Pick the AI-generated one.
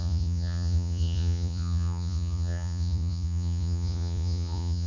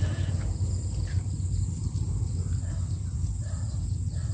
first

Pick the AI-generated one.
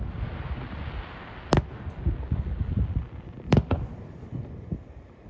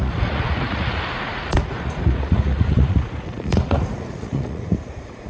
second